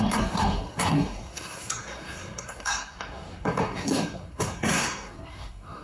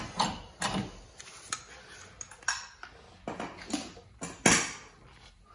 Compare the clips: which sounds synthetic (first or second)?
first